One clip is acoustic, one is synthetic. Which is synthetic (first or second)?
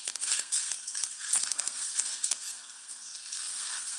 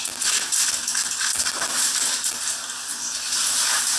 first